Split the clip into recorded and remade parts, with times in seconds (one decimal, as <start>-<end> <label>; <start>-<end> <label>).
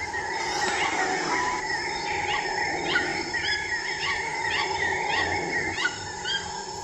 0.0-0.5 remade; 0.5-1.4 recorded; 1.4-6.8 remade